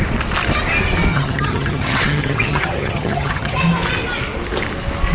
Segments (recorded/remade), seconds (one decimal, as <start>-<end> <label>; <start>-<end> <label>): 0.0-1.1 recorded; 1.1-3.6 remade; 3.6-5.1 recorded